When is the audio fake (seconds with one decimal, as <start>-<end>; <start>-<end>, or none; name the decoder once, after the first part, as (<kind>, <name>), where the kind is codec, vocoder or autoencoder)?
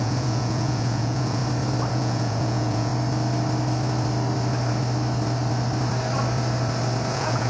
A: 0.0-1.4 (vocoder, Vocos); 1.9-2.9; 7.1-7.5